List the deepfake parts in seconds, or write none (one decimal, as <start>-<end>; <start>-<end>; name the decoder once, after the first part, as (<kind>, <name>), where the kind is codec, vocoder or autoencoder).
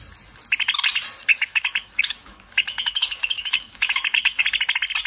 1.3-4.4 (autoencoder, DAC-VAE)